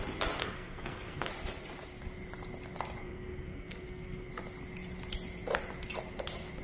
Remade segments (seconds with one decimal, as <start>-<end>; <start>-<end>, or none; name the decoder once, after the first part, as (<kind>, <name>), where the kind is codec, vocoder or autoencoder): 0.4-1.3 (codec, SNAC); 3.0-4.3